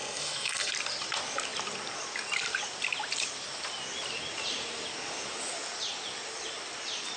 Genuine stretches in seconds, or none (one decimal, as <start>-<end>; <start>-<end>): 0.7-7.2